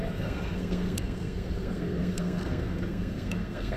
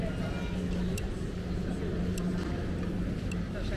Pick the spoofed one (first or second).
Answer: first